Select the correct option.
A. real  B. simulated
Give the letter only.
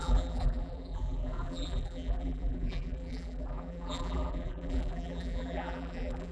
B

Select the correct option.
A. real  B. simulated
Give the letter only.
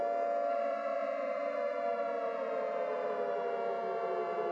A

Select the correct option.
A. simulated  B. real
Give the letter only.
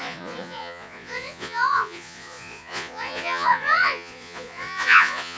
A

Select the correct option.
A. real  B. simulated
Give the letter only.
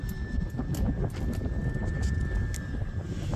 A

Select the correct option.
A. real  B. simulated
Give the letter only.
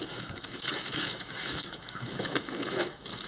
B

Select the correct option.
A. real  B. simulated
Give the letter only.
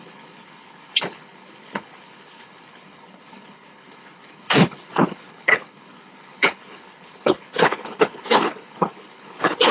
B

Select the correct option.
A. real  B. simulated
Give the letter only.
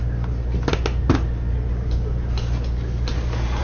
A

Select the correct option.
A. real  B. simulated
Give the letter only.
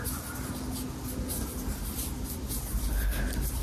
A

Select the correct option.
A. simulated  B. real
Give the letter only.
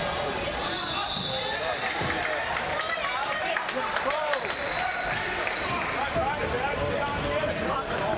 A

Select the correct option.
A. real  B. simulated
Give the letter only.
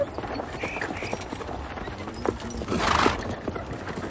A